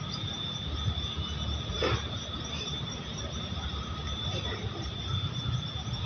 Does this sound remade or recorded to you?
recorded